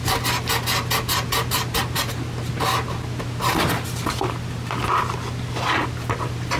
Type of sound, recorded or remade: recorded